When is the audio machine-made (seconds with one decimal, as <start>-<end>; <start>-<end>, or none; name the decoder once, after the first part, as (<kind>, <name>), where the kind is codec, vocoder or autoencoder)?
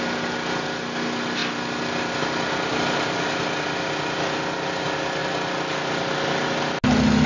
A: none